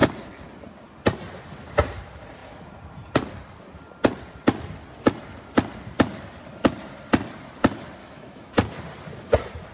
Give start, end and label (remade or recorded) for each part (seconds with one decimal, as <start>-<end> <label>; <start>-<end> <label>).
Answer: 0.0-8.0 recorded; 8.0-8.5 remade; 8.5-9.7 recorded